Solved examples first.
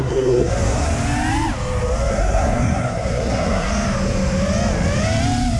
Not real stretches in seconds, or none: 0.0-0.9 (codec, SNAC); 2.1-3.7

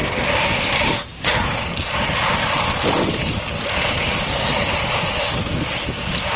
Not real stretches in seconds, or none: none